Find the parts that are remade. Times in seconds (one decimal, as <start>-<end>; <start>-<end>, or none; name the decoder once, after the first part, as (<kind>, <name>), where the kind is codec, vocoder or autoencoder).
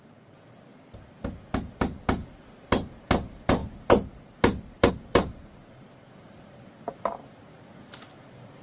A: 0.0-0.7 (vocoder, BigVGAN v2); 1.7-3.6; 4.9-8.6